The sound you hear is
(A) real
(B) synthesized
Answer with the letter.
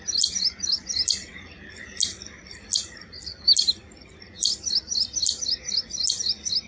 A